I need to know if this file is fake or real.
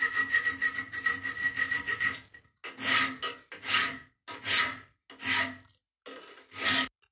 real